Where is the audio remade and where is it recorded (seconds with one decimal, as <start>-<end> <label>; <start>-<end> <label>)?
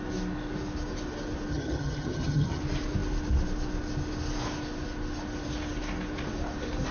0.0-1.5 recorded; 1.5-2.6 remade; 2.6-6.9 recorded